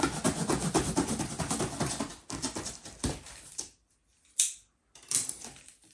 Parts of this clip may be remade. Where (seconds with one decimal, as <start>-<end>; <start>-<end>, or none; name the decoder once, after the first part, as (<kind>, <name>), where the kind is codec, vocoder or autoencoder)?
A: 0.0-5.9 (vocoder, BigVGAN v2)